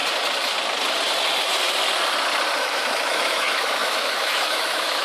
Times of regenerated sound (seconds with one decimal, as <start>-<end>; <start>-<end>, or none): 2.6-5.0